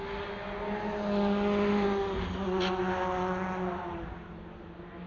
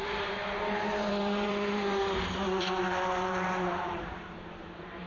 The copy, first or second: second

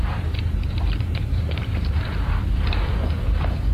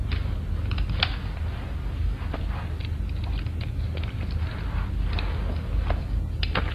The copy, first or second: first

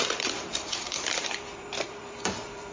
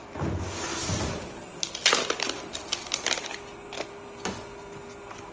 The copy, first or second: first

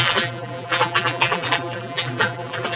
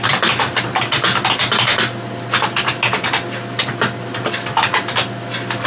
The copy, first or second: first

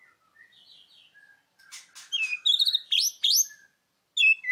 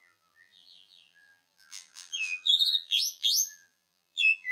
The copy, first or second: second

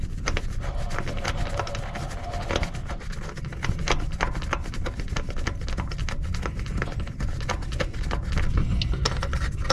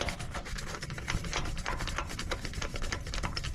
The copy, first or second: second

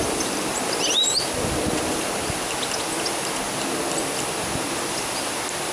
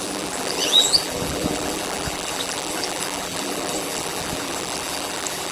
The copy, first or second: second